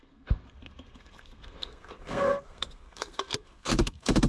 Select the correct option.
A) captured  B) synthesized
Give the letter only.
B